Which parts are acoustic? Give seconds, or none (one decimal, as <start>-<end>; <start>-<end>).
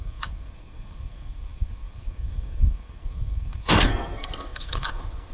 none